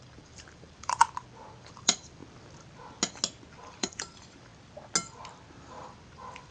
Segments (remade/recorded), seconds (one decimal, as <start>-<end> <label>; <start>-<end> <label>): 0.0-1.0 remade; 1.0-1.6 recorded; 1.6-2.2 remade; 2.2-3.6 recorded; 3.6-4.5 remade; 4.5-5.9 recorded; 5.9-6.5 remade